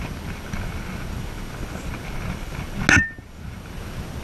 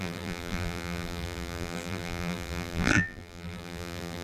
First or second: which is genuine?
first